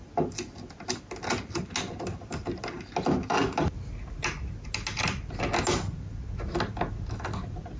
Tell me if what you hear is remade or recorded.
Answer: recorded